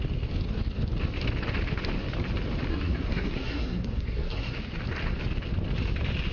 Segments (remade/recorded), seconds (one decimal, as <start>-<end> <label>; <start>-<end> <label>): 0.0-2.7 recorded; 2.7-4.6 remade; 4.6-6.3 recorded